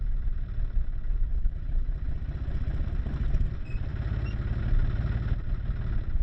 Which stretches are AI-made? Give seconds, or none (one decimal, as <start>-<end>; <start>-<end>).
none